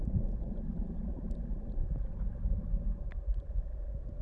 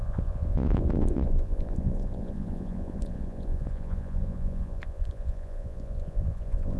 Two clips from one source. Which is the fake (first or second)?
second